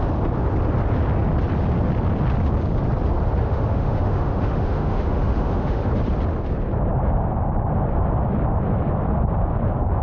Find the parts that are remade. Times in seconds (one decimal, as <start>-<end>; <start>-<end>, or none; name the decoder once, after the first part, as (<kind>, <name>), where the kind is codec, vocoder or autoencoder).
3.4-5.9 (autoencoder, DAC-VAE)